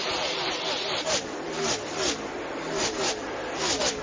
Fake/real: real